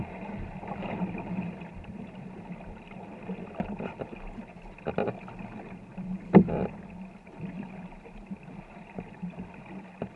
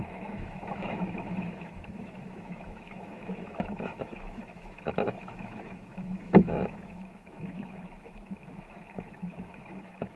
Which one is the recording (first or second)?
first